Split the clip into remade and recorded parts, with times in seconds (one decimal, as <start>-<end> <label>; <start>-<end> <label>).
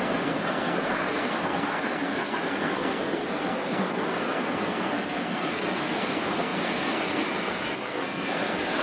0.0-8.8 remade